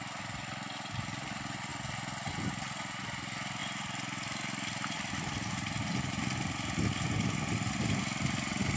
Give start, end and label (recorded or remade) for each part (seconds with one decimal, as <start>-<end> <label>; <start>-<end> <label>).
0.0-8.8 recorded